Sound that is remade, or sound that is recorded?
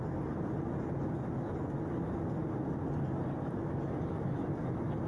recorded